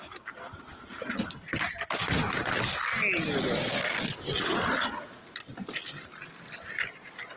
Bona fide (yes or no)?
yes